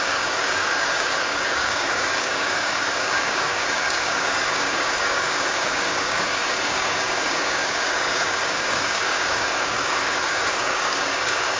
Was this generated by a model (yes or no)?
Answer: yes